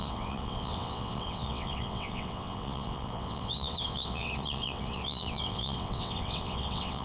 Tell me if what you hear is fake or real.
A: fake